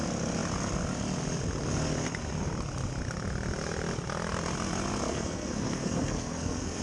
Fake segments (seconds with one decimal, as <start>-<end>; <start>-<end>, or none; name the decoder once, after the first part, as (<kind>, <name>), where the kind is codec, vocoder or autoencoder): 5.1-6.8 (codec, SNAC)